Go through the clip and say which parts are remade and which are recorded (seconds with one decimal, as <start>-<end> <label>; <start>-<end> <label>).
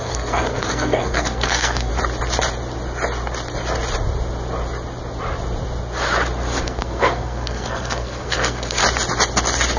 0.0-1.9 remade; 1.9-6.6 recorded; 6.6-8.8 remade; 8.8-9.8 recorded